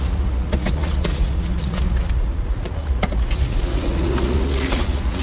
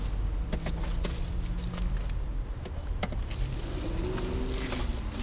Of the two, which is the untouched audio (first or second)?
second